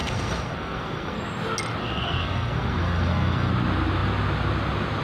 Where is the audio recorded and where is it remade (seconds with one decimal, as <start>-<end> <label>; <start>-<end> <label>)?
0.0-1.2 remade; 1.2-1.8 recorded; 1.8-3.5 remade; 3.5-5.0 recorded